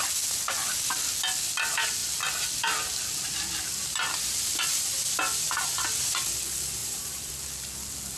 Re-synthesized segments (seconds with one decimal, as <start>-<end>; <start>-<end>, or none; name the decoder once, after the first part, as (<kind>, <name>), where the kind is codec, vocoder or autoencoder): 6.8-7.3 (vocoder, BigVGAN v2)